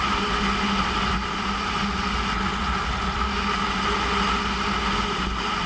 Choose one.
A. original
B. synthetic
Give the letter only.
A